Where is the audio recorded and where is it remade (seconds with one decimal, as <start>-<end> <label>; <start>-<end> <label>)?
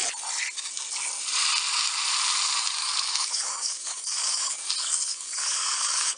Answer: 0.0-2.8 recorded; 2.8-4.6 remade; 4.6-5.1 recorded; 5.1-6.2 remade